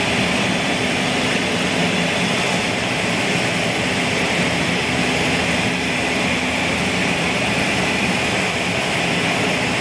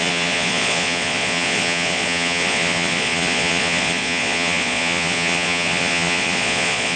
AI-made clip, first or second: second